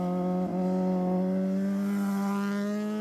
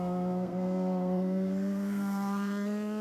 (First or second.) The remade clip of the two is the second